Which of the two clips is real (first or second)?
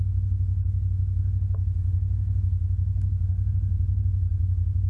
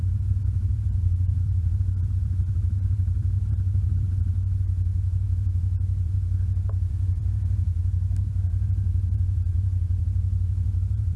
first